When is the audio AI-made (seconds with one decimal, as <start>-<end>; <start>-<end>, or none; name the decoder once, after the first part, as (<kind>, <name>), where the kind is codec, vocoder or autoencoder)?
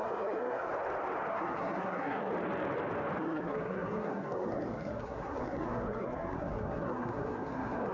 0.0-0.7 (codec, SNAC); 1.3-2.3; 3.2-7.9